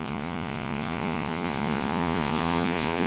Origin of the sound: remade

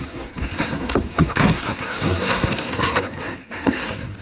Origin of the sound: remade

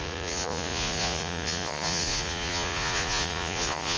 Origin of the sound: remade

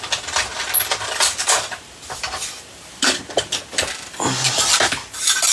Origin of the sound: recorded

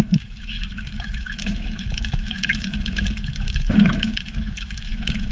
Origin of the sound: remade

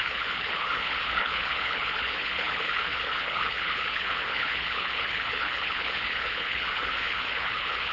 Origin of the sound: remade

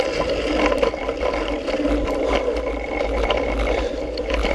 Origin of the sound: recorded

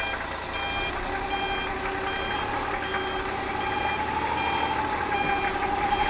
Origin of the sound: recorded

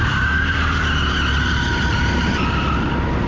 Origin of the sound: recorded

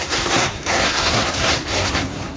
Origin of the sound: remade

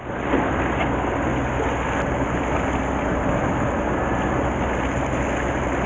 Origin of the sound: recorded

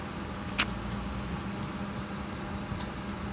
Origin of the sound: recorded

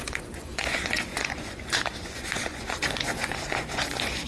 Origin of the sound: remade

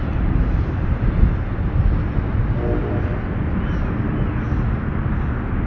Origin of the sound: recorded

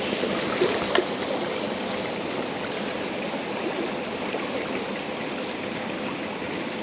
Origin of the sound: recorded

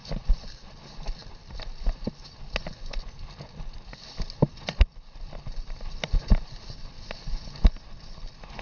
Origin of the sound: recorded